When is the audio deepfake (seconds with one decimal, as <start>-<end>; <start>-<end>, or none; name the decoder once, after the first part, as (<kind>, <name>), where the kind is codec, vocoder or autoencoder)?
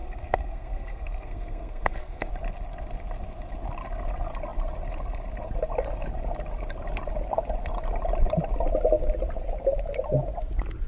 0.0-2.3 (codec, SNAC)